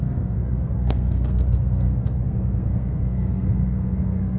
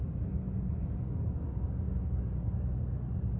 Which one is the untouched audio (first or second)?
second